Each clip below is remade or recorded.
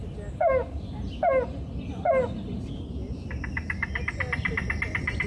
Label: recorded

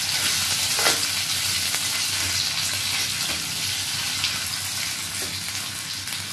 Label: recorded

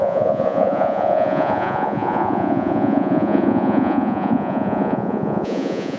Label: remade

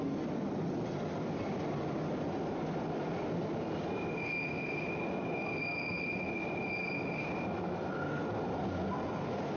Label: recorded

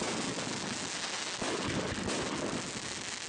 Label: recorded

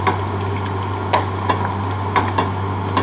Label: recorded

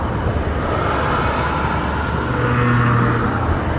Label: recorded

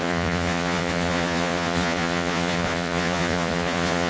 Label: remade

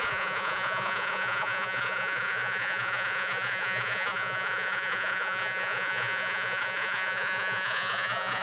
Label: remade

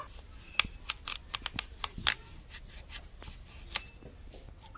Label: recorded